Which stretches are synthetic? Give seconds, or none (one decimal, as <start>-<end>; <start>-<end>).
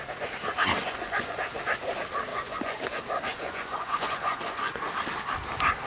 0.8-1.4; 2.3-2.8; 3.3-4.8